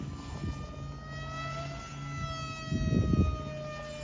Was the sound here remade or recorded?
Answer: recorded